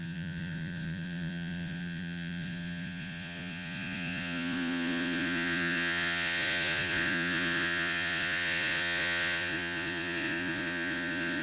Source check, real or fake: fake